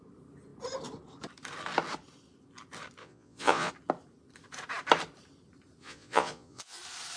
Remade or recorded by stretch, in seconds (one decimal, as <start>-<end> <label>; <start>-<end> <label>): 0.0-3.0 recorded; 3.0-3.7 remade; 3.7-5.8 recorded; 5.8-6.8 remade; 6.8-7.2 recorded